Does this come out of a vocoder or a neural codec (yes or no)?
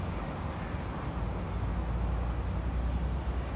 no